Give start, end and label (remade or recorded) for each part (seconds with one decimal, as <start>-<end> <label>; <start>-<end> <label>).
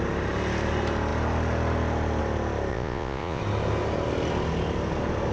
0.0-2.7 recorded; 2.7-3.4 remade; 3.4-5.3 recorded